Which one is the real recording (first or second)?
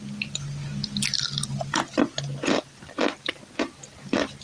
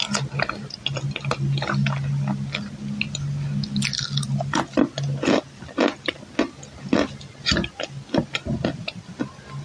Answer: second